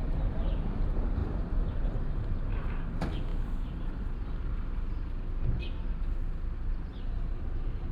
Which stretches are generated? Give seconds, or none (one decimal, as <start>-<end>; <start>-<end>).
0.0-0.5; 1.2-2.8; 6.9-7.9